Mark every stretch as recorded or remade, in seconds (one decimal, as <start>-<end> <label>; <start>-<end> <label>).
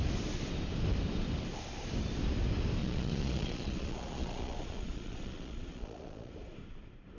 0.0-2.8 recorded; 2.8-6.3 remade; 6.3-7.2 recorded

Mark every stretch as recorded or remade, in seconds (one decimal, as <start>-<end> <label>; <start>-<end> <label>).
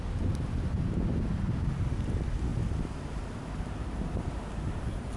0.0-2.5 recorded; 2.5-4.3 remade; 4.3-5.2 recorded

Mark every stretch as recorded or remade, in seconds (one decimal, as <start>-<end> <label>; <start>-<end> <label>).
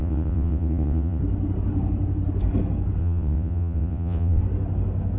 0.0-1.2 remade; 1.2-3.0 recorded; 3.0-4.4 remade; 4.4-5.2 recorded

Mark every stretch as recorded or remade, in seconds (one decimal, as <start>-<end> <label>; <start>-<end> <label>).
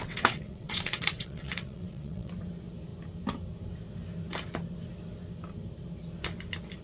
0.0-2.3 remade; 2.3-6.8 recorded